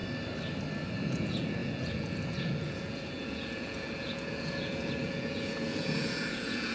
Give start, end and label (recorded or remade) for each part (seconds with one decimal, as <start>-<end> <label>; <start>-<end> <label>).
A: 0.0-1.0 recorded; 1.0-6.7 remade